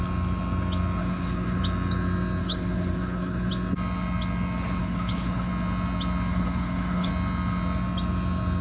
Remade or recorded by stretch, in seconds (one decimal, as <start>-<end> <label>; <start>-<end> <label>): 0.0-1.0 recorded; 1.0-1.6 remade; 1.6-2.4 recorded; 2.4-3.5 remade; 3.5-4.8 recorded; 4.8-5.5 remade; 5.5-6.3 recorded; 6.3-7.1 remade; 7.1-8.6 recorded